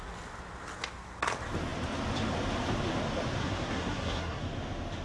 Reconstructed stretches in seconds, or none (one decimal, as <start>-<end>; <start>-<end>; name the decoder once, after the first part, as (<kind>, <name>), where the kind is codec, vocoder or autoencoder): 3.4-4.4 (codec, SNAC)